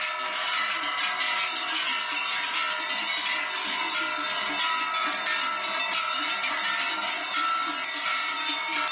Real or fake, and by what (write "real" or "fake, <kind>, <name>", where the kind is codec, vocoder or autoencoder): real